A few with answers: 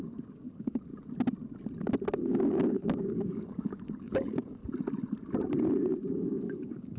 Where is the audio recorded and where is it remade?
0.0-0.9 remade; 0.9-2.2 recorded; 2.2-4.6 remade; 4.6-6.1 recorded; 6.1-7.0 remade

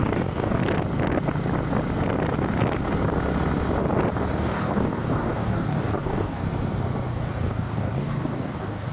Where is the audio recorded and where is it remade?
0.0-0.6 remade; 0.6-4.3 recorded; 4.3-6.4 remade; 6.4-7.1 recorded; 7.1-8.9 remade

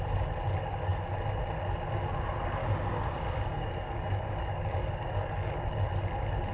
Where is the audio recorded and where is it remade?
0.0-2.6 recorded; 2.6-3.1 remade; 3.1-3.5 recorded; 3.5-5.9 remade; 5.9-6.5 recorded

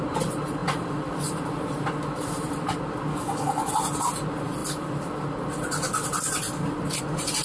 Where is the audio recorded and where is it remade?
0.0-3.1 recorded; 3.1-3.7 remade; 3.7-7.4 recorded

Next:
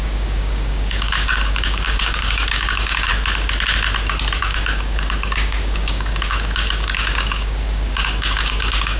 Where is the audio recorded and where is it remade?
0.0-3.1 remade; 3.1-4.4 recorded; 4.4-9.0 remade

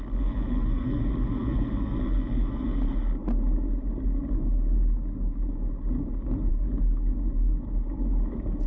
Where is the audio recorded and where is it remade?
0.0-8.7 recorded

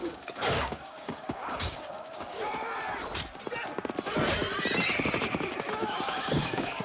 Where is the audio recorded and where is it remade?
0.0-2.4 remade; 2.4-5.3 recorded; 5.3-6.8 remade

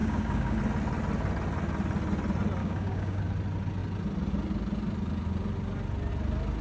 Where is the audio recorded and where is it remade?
0.0-0.6 remade; 0.6-2.6 recorded; 2.6-3.2 remade; 3.2-6.6 recorded